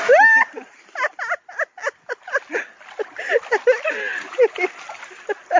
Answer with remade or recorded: recorded